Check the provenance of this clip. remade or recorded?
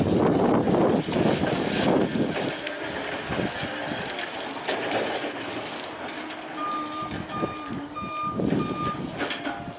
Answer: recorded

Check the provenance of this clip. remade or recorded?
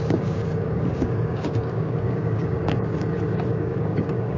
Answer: remade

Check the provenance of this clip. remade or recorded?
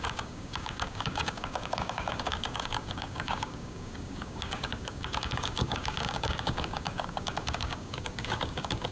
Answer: remade